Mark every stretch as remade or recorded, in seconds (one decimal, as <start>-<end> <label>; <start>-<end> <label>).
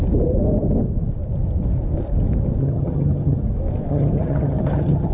0.0-2.6 recorded; 2.6-3.4 remade; 3.4-3.9 recorded; 3.9-5.1 remade